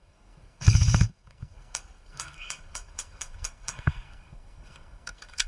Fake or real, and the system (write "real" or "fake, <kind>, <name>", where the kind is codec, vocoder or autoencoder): fake, codec, SNAC